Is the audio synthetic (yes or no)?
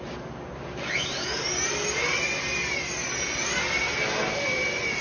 no